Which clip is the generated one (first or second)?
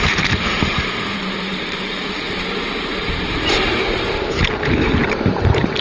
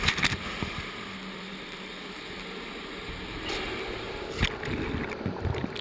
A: first